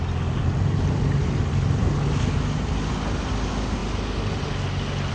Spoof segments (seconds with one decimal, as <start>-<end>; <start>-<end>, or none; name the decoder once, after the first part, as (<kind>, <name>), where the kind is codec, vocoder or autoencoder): none